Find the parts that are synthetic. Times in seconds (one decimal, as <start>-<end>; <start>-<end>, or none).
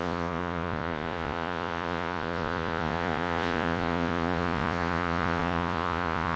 0.0-6.4